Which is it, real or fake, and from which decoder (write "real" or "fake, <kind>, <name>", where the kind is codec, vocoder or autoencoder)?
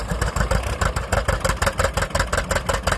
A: real